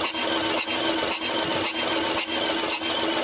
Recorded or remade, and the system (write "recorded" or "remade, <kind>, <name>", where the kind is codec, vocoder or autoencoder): recorded